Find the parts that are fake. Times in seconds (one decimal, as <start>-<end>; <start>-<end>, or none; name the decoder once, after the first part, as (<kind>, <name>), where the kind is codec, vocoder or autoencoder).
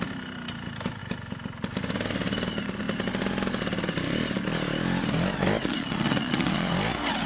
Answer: 5.6-6.7 (vocoder, Vocos)